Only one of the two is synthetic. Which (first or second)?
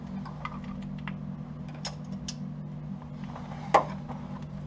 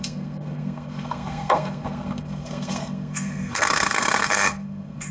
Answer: second